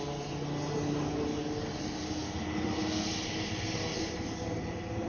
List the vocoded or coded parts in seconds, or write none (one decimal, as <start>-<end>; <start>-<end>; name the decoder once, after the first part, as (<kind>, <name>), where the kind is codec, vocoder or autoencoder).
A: none